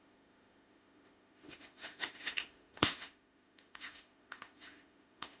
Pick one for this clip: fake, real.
fake